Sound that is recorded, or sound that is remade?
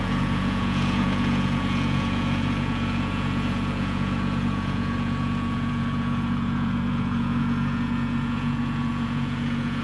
remade